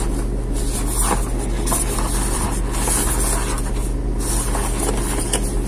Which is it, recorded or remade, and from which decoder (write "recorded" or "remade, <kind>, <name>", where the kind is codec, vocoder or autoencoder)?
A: recorded